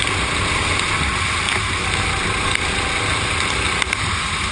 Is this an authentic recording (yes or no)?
yes